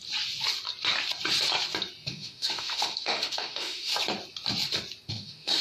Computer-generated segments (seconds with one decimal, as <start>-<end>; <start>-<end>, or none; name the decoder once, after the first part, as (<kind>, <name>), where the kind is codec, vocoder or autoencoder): 2.1-3.9 (autoencoder, DAC-VAE); 5.1-5.6